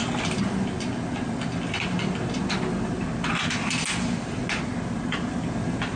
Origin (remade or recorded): recorded